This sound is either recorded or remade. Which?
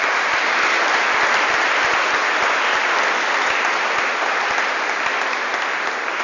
recorded